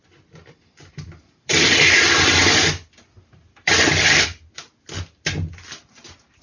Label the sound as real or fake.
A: real